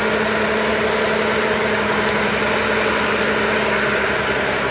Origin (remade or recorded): recorded